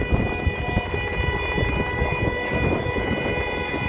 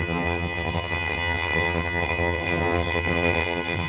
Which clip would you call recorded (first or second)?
first